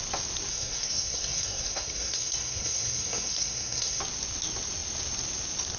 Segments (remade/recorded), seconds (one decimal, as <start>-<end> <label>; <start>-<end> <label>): 0.0-0.5 recorded; 0.5-4.0 remade; 4.0-5.8 recorded